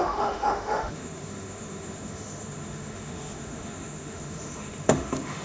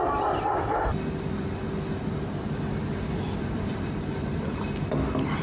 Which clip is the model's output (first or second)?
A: first